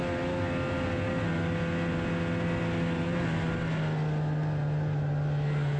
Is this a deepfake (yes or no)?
no